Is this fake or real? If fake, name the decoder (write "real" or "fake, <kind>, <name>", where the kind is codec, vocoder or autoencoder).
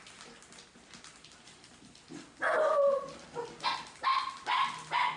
real